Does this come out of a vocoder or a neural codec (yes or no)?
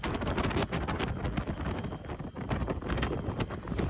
no